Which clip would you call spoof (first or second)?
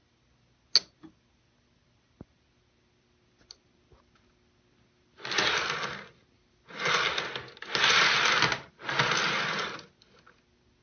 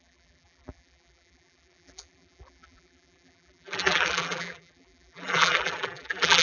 second